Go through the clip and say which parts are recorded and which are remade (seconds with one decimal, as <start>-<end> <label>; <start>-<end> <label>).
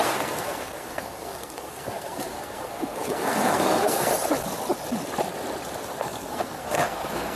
0.0-4.1 remade; 4.1-6.0 recorded; 6.0-7.4 remade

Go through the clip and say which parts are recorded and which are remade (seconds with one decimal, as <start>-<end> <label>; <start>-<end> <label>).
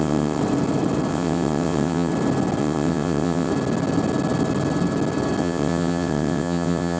0.0-0.4 remade; 0.4-1.1 recorded; 1.1-2.1 remade; 2.1-2.6 recorded; 2.6-3.5 remade; 3.5-5.4 recorded; 5.4-7.0 remade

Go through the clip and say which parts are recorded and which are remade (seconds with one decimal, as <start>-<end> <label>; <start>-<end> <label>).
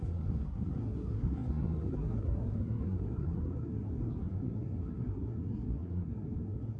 0.0-6.8 remade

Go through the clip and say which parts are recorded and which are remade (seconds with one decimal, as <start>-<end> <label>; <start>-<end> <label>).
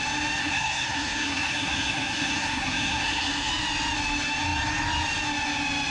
0.0-0.4 recorded; 0.4-3.5 remade; 3.5-5.9 recorded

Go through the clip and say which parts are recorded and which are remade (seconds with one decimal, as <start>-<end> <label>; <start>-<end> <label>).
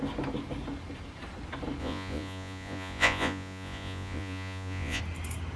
0.0-1.8 recorded; 1.8-5.0 remade; 5.0-5.6 recorded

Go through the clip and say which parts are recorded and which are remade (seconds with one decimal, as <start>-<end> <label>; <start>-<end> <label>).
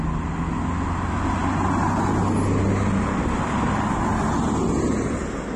0.0-5.6 recorded